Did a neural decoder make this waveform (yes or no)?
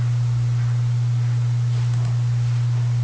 no